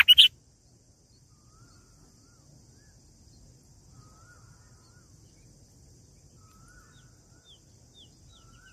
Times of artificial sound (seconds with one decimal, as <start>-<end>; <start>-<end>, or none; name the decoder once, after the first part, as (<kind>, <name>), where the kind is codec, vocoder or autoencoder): none